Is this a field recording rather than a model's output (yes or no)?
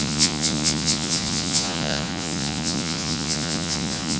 no